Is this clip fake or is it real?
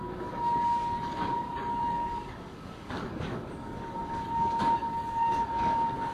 fake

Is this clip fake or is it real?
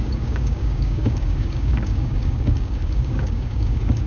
fake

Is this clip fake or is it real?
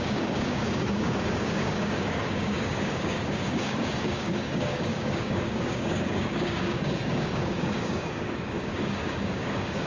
fake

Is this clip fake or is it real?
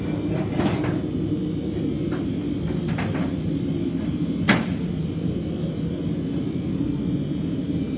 real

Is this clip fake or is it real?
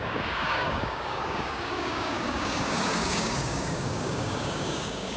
fake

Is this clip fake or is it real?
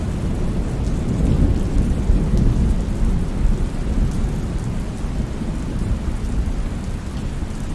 real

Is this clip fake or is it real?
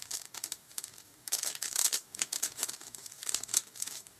fake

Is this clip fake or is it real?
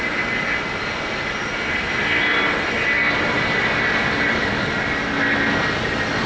real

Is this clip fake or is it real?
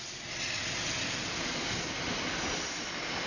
real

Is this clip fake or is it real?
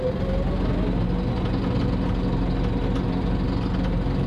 real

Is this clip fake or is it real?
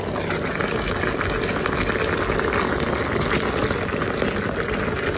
real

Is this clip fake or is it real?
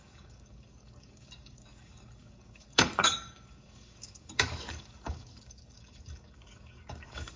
fake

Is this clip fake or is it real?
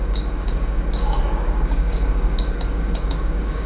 fake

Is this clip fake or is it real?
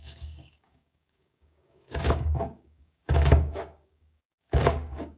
fake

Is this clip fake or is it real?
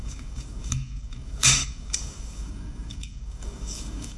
fake